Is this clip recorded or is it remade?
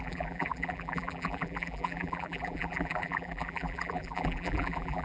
remade